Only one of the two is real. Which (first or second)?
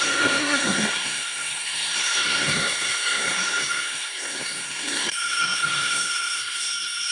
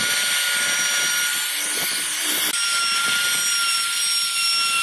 second